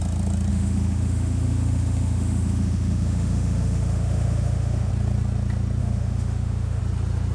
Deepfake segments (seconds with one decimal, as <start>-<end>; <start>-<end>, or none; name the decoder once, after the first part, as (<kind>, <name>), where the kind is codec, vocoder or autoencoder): 0.5-4.9 (autoencoder, DAC-VAE); 5.8-6.8